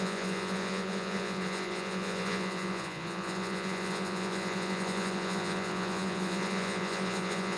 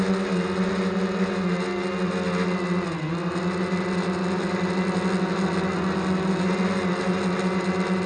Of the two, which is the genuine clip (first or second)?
second